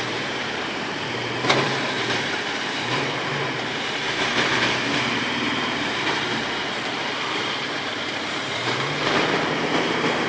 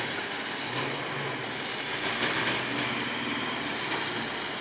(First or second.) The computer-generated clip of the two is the first